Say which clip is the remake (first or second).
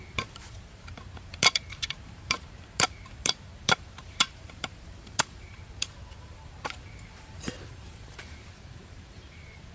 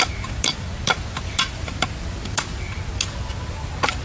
first